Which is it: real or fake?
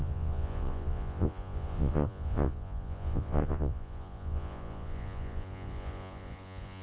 fake